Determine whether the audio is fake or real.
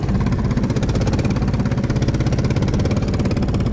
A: real